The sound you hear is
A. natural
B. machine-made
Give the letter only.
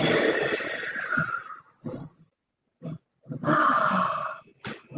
A